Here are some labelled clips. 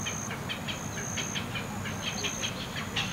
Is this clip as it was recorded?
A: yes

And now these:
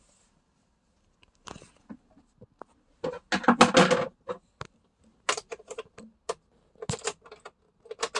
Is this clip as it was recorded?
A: yes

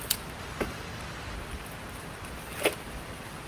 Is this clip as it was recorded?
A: no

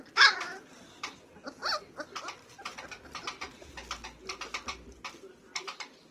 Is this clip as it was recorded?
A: yes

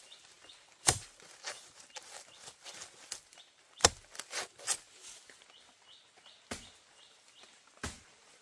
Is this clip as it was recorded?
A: yes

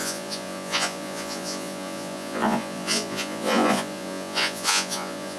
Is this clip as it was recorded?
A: no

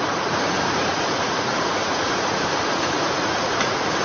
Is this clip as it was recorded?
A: no